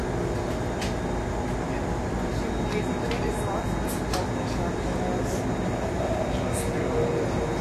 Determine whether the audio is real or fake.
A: real